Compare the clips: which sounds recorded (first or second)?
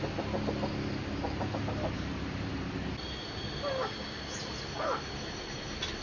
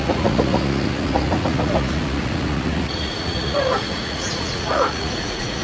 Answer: first